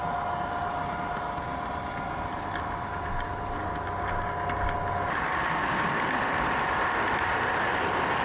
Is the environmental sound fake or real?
real